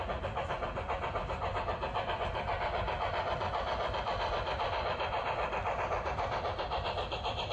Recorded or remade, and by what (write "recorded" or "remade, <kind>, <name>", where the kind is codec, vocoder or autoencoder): remade, vocoder, BigVGAN v2